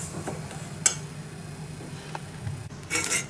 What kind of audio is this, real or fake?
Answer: real